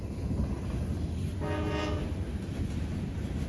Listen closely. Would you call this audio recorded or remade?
recorded